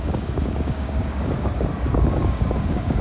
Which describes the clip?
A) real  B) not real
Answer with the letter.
B